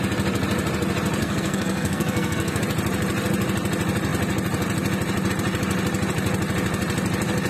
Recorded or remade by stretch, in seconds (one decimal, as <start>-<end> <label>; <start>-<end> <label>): 0.0-1.2 recorded; 1.2-2.6 remade; 2.6-7.5 recorded